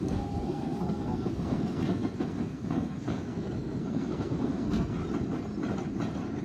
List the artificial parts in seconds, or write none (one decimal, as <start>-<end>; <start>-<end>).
0.0-5.0